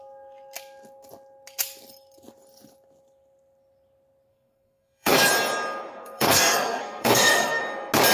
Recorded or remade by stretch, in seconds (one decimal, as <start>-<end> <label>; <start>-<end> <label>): 0.0-4.3 recorded; 4.3-5.3 remade; 5.3-5.9 recorded; 5.9-7.6 remade; 7.6-8.1 recorded